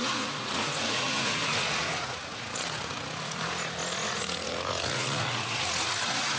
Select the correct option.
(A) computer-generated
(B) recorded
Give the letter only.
A